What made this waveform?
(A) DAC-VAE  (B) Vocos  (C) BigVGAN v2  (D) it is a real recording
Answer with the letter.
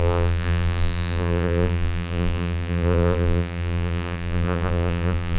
C